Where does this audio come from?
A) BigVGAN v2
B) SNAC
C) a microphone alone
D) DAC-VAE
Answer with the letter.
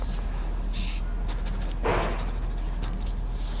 C